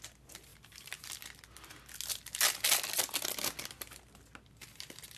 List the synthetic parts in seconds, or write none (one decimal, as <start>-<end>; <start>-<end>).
none